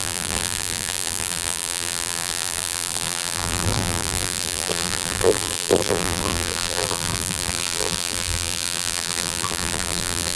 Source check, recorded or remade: remade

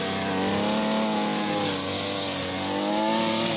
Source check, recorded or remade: recorded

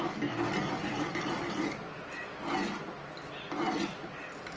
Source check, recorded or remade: recorded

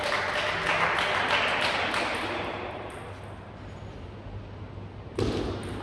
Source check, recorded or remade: recorded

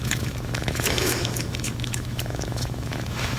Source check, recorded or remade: remade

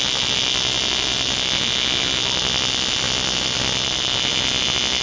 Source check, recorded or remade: recorded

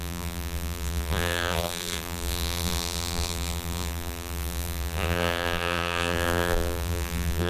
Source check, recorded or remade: remade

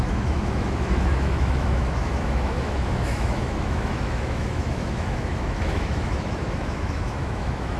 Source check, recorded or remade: remade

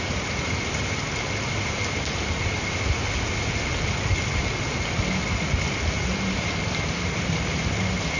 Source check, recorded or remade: recorded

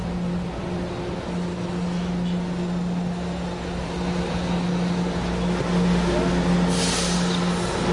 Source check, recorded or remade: recorded